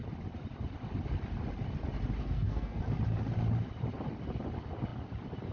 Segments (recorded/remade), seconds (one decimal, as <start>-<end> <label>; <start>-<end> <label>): 0.0-2.2 recorded; 2.2-2.8 remade; 2.8-5.5 recorded